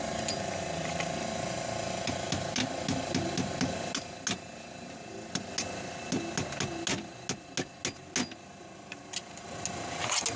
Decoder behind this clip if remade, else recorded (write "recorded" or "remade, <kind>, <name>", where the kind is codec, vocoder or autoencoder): recorded